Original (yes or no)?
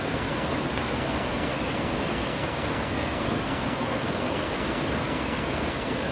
no